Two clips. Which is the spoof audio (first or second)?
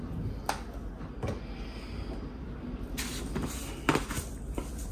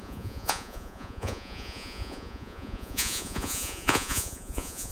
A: second